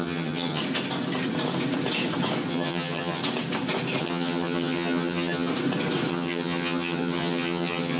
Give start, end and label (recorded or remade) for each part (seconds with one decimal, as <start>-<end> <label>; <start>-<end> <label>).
0.0-0.6 remade; 0.6-2.5 recorded; 2.5-3.2 remade; 3.2-4.0 recorded; 4.0-5.5 remade; 5.5-6.1 recorded; 6.1-8.0 remade